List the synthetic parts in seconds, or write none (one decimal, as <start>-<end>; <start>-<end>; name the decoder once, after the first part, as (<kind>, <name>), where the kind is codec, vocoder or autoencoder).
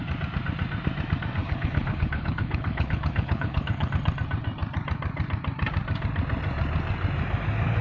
1.4-3.9 (codec, HILCodec)